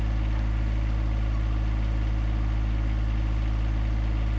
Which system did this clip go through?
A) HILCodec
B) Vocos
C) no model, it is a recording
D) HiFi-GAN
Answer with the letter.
C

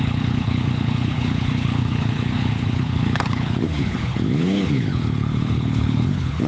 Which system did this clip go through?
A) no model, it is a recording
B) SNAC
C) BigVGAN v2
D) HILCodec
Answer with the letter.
D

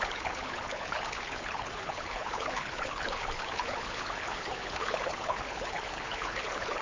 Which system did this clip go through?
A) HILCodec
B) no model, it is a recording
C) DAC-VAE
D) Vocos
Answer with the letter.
A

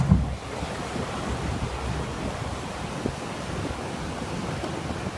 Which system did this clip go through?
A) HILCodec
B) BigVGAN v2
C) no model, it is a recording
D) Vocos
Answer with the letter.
C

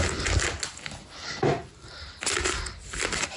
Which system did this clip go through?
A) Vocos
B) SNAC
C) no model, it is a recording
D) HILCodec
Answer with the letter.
C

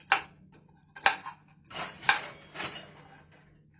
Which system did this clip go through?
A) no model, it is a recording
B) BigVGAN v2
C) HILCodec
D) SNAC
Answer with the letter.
A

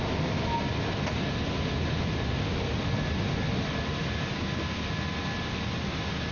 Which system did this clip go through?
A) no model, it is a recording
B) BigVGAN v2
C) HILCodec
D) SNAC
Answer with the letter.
A